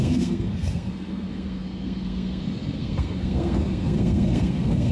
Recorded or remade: remade